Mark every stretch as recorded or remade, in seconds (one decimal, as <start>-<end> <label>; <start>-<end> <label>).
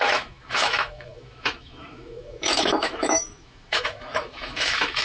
0.0-5.0 remade